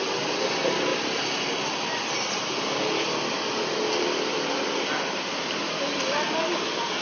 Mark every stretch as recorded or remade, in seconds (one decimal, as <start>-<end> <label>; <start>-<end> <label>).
0.0-7.0 recorded

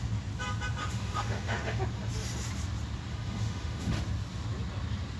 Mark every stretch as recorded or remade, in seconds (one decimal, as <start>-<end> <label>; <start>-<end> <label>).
0.0-0.8 recorded; 0.8-1.8 remade; 1.8-3.1 recorded; 3.1-4.0 remade; 4.0-5.2 recorded

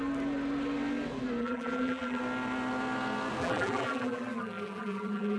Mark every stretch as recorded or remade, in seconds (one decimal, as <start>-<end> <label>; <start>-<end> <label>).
0.0-1.4 recorded; 1.4-2.2 remade; 2.2-3.4 recorded; 3.4-5.4 remade

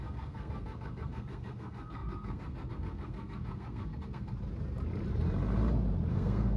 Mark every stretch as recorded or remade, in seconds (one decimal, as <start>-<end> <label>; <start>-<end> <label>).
0.0-4.3 remade; 4.3-6.1 recorded; 6.1-6.6 remade

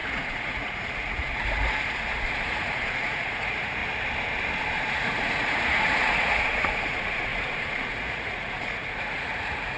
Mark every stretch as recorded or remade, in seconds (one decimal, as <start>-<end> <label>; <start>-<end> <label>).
0.0-3.8 remade; 3.8-4.9 recorded; 4.9-9.8 remade

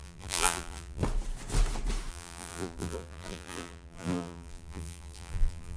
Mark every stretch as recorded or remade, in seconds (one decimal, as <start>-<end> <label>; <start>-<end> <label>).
0.0-1.0 remade; 1.0-2.1 recorded; 2.1-5.8 remade

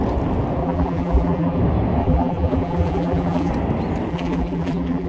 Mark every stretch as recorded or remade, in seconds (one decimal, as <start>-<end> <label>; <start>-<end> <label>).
0.0-0.6 recorded; 0.6-1.6 remade; 1.6-2.0 recorded; 2.0-3.5 remade; 3.5-4.1 recorded; 4.1-5.1 remade